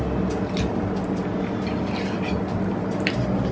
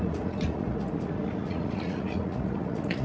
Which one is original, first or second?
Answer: first